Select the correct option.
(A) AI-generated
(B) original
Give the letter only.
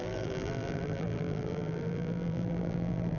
A